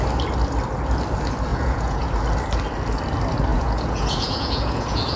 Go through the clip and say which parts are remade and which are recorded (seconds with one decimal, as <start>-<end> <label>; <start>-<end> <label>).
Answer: 0.0-1.5 recorded; 1.5-2.1 remade; 2.1-3.5 recorded; 3.5-5.2 remade